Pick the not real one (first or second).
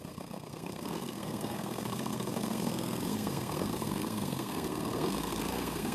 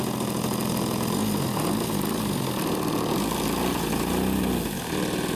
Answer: first